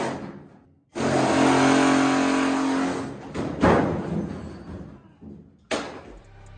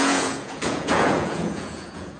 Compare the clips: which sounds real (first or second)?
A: first